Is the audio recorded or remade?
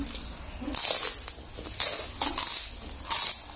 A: recorded